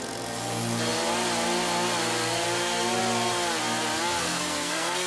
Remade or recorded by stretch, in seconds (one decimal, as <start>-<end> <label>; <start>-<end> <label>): 0.0-4.2 recorded; 4.2-5.1 remade